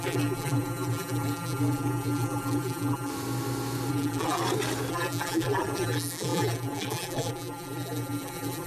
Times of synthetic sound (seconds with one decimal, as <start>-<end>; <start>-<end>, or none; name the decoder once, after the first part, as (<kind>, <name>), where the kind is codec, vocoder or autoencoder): 0.0-3.1 (vocoder, BigVGAN v2); 3.9-4.4; 4.9-8.7